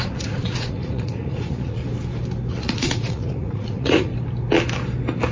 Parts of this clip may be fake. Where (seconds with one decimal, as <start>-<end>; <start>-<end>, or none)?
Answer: 0.0-1.8; 2.5-4.1